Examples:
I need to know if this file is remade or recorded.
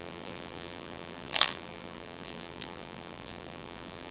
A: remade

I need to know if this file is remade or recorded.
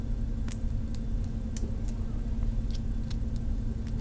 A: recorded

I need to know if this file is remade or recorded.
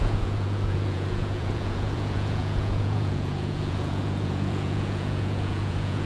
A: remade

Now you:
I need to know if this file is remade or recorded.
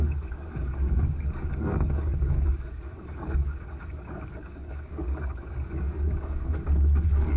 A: remade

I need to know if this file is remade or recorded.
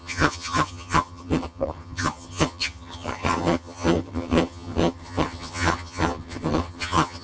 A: remade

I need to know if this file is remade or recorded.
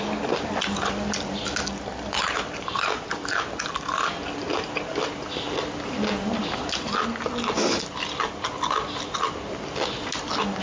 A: recorded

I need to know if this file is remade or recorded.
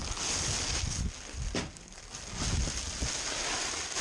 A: recorded